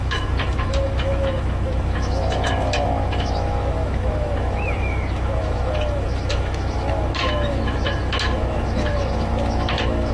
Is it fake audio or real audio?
fake